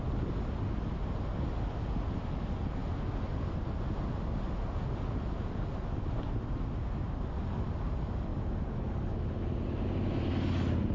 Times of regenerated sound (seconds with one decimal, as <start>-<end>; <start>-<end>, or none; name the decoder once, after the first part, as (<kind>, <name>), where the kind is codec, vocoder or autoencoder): none